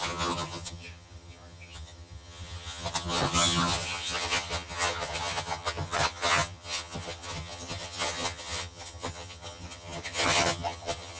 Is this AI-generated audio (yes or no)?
yes